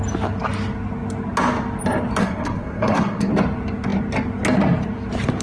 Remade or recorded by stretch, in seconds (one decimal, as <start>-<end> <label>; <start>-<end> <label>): 0.0-2.2 recorded; 2.2-3.3 remade; 3.3-5.4 recorded